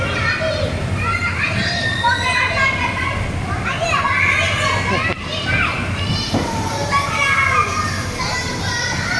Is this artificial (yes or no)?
no